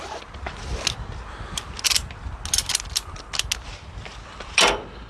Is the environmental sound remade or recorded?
recorded